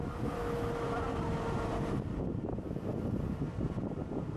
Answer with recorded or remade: recorded